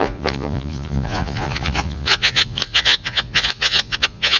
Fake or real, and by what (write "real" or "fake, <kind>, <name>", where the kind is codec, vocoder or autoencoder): fake, vocoder, Vocos